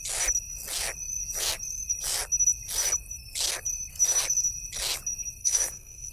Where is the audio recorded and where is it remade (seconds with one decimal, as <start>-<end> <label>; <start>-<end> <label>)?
0.0-5.4 recorded; 5.4-6.1 remade